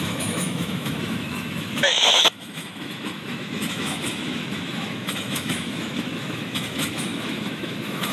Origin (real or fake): fake